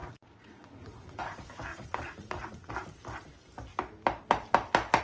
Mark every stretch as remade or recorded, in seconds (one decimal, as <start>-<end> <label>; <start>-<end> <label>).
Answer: 0.0-1.2 remade; 1.2-1.7 recorded; 1.7-2.7 remade; 2.7-5.0 recorded